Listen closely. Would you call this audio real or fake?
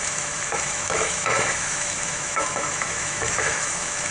fake